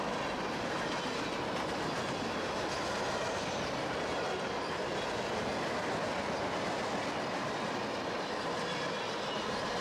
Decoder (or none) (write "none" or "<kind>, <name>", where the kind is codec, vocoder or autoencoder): none